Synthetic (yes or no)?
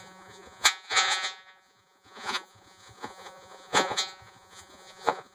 yes